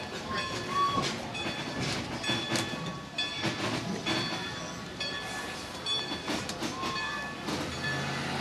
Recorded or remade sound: recorded